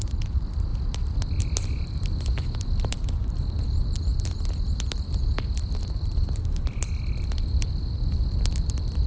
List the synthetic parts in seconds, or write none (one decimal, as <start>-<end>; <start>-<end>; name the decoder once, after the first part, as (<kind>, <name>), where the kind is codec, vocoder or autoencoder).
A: 0.0-4.1 (vocoder, BigVGAN v2); 5.6-9.1